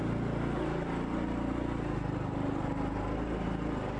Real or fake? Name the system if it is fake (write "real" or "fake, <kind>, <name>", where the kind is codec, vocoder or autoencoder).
real